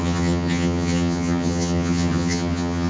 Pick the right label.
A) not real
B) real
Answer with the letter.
A